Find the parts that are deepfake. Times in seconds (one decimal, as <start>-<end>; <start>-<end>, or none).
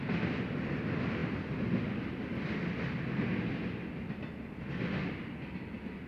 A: none